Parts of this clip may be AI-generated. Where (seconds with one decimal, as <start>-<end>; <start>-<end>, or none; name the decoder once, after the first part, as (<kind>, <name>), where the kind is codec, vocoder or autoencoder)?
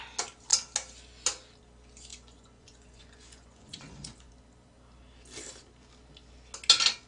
2.1-4.3 (vocoder, Vocos)